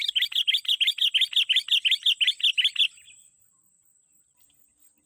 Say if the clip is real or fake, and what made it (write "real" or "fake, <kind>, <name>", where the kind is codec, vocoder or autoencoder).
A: real